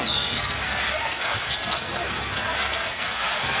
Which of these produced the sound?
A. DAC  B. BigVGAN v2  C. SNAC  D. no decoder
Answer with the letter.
C